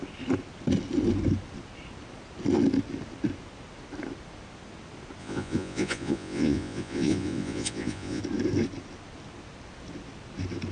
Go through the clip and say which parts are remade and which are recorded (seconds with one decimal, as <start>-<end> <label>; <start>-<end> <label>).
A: 0.0-5.2 recorded; 5.2-8.2 remade; 8.2-10.7 recorded